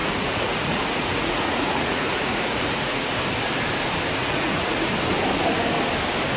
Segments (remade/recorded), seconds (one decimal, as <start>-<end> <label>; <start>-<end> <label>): 0.0-3.2 remade; 3.2-4.2 recorded; 4.2-4.9 remade; 4.9-6.4 recorded